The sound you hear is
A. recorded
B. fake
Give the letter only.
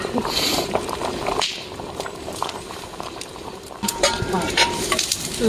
B